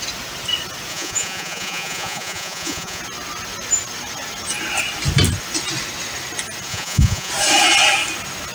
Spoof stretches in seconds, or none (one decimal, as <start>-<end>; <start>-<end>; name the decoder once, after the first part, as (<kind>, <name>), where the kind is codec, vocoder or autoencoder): 0.9-3.0 (vocoder, Vocos); 6.7-7.3